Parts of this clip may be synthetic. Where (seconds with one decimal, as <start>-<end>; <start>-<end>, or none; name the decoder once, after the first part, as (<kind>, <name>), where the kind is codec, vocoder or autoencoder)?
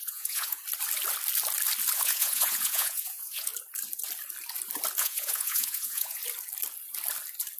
0.0-0.6 (vocoder, Vocos); 2.0-3.5; 5.0-6.2